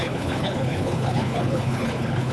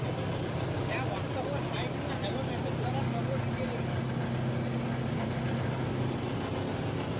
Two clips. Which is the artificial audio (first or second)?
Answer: first